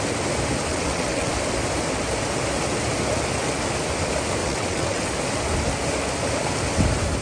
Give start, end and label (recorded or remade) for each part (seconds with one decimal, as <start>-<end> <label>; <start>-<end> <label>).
0.0-0.7 recorded; 0.7-1.3 remade; 1.3-4.4 recorded; 4.4-5.1 remade; 5.1-7.2 recorded